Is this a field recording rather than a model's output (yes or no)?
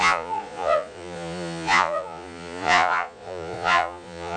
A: no